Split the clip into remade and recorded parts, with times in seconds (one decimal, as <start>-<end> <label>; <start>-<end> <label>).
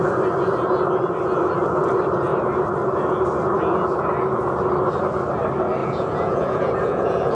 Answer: 0.0-5.8 recorded; 5.8-7.3 remade